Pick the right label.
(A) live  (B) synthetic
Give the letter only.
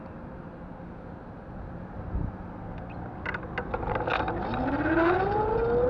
A